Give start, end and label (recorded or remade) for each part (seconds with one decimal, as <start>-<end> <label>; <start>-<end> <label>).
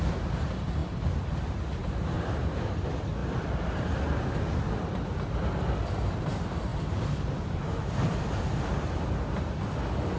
0.0-1.8 recorded; 1.8-2.4 remade; 2.4-6.7 recorded; 6.7-8.2 remade; 8.2-10.2 recorded